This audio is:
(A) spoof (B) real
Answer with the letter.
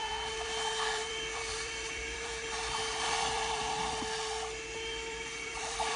A